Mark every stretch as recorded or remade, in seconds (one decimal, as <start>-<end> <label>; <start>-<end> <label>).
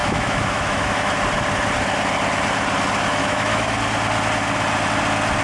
0.0-1.1 remade; 1.1-3.2 recorded; 3.2-3.8 remade; 3.8-5.4 recorded